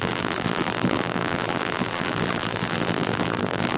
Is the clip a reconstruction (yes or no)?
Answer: yes